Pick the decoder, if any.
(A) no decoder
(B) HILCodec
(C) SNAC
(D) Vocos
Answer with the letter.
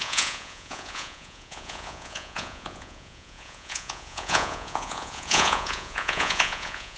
D